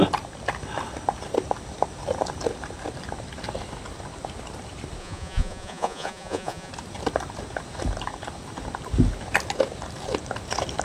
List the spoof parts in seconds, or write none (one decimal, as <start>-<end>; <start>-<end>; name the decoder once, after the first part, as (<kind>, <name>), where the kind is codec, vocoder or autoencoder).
5.0-6.7 (vocoder, Vocos)